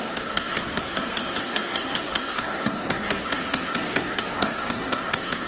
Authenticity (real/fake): fake